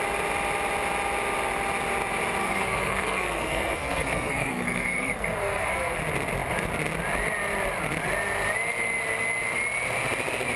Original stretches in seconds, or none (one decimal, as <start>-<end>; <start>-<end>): 0.0-2.4; 6.0-10.6